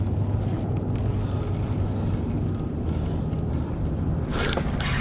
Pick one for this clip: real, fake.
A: real